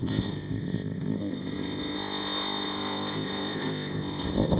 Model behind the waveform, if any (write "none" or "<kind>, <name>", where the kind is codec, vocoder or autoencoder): codec, ZipCodec